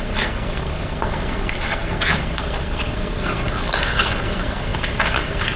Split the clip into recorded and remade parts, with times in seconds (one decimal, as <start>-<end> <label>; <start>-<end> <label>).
0.0-5.6 remade